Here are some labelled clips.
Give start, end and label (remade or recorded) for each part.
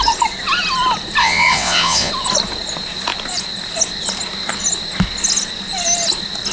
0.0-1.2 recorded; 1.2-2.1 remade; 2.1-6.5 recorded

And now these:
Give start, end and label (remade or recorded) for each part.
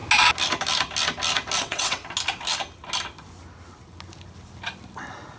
0.0-1.6 recorded; 1.6-2.0 remade; 2.0-5.4 recorded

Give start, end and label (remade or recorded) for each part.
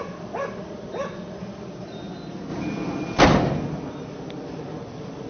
0.0-5.3 recorded